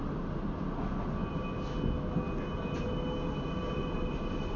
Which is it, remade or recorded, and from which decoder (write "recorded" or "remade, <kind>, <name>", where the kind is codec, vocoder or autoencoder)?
recorded